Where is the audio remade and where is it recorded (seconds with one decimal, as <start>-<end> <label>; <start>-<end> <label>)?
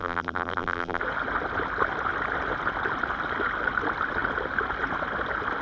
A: 0.0-1.0 remade; 1.0-5.6 recorded